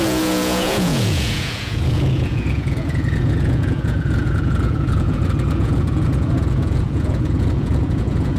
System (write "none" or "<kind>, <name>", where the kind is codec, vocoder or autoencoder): vocoder, Vocos